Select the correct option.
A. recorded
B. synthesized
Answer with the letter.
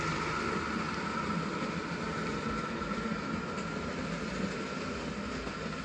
A